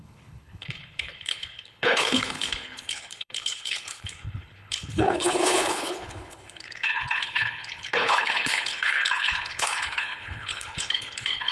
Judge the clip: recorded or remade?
remade